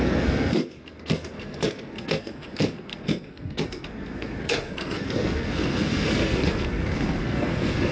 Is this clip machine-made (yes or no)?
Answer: yes